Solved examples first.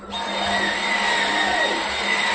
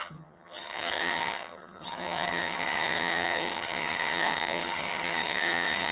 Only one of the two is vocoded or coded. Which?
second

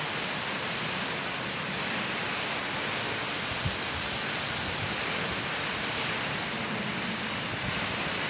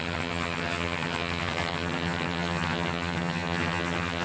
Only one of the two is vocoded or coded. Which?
second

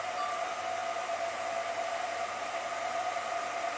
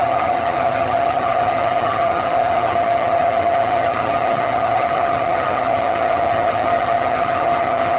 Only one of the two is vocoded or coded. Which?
second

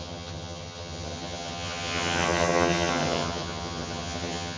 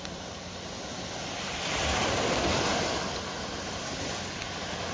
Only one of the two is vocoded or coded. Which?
first